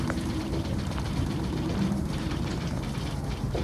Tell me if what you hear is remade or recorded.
remade